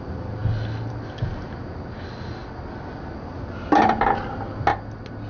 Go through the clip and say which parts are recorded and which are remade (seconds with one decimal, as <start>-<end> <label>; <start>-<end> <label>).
0.0-5.3 recorded